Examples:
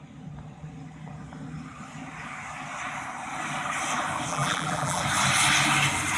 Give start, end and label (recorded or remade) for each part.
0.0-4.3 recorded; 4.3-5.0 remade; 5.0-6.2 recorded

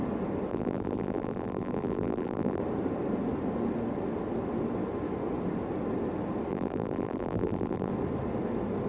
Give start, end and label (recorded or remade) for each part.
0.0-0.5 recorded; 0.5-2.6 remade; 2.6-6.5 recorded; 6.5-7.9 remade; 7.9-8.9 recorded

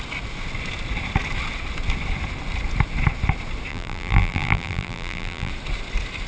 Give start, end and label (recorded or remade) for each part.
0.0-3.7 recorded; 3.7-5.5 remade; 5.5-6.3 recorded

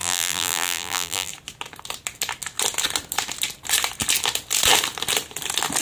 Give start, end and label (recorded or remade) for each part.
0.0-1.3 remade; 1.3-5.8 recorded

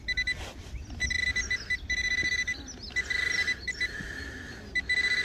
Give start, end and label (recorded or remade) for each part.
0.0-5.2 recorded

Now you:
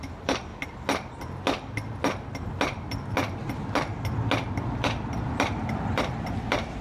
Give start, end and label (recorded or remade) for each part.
0.0-0.5 remade; 0.5-4.5 recorded; 4.5-6.8 remade